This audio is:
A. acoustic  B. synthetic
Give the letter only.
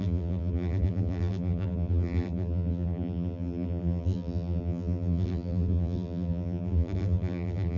B